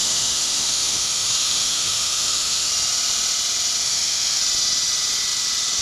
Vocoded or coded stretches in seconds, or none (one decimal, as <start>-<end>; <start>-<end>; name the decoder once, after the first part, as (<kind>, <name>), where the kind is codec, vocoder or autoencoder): 0.0-2.7 (autoencoder, DAC-VAE); 3.8-4.4